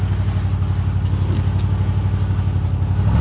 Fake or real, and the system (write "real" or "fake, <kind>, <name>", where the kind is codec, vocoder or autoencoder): real